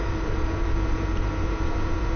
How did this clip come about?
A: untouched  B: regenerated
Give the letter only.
B